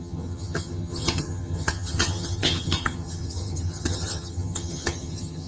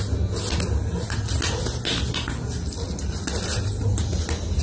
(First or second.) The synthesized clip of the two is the first